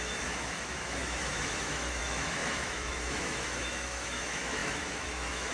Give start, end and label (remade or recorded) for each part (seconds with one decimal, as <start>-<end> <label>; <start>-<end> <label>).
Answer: 0.0-5.5 remade